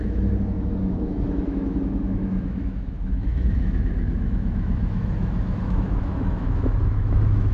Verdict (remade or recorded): remade